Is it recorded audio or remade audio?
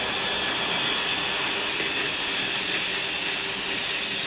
recorded